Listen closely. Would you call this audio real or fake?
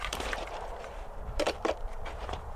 fake